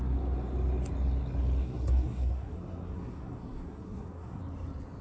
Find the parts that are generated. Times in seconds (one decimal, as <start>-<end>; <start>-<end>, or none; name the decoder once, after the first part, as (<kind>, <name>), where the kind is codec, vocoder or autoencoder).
1.6-4.4 (codec, SNAC)

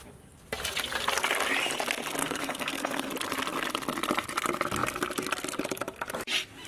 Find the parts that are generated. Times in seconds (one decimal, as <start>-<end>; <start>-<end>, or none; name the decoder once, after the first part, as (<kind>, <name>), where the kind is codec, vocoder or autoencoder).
2.2-3.1 (codec, SNAC)

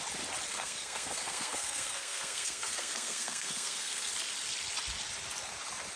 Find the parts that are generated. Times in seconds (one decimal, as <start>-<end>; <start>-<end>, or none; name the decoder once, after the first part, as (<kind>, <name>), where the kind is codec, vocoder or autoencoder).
0.5-4.1 (codec, SNAC)

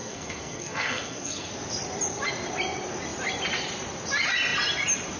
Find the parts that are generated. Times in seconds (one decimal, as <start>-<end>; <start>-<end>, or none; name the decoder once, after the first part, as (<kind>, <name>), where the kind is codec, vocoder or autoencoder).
0.0-1.5 (codec, SNAC)

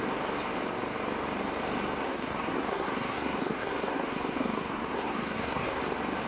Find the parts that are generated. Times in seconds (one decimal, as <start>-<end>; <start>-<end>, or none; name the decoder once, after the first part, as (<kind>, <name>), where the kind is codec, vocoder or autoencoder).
2.0-5.8 (codec, SNAC)